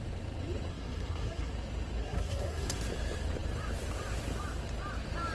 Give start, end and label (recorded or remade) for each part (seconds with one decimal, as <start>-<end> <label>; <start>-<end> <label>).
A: 0.0-0.7 recorded; 0.7-1.5 remade; 1.5-2.0 recorded; 2.0-2.8 remade; 2.8-5.3 recorded